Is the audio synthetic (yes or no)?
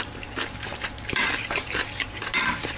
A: yes